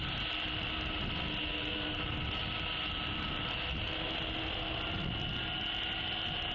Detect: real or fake real